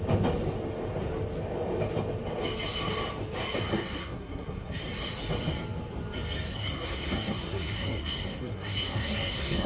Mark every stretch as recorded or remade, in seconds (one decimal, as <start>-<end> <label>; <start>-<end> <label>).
0.0-3.7 recorded; 3.7-4.8 remade; 4.8-6.5 recorded; 6.5-9.7 remade